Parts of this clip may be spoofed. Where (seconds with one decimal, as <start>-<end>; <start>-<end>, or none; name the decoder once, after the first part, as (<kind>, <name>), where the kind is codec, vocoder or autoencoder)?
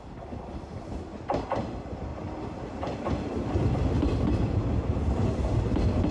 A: none